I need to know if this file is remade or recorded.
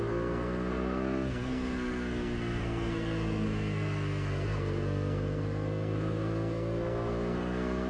remade